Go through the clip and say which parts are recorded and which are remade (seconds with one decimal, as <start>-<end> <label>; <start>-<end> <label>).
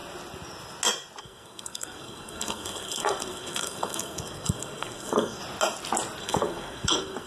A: 0.0-1.2 recorded; 1.2-5.4 remade; 5.4-6.2 recorded; 6.2-7.3 remade